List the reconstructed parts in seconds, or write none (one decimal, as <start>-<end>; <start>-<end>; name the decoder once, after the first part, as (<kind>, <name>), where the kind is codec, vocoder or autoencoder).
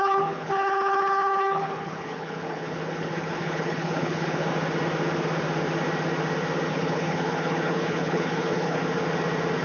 0.0-4.5 (codec, HILCodec); 6.7-8.8